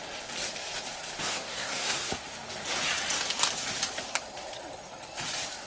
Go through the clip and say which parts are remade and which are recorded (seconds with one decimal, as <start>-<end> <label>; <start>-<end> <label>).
0.0-1.2 recorded; 1.2-2.1 remade; 2.1-5.7 recorded